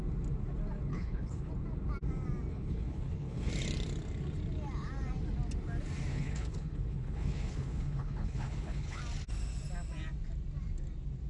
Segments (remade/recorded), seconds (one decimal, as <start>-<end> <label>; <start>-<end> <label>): 0.0-0.9 recorded; 0.9-1.5 remade; 1.5-2.5 recorded; 2.5-3.5 remade; 3.5-6.1 recorded; 6.1-9.0 remade; 9.0-11.3 recorded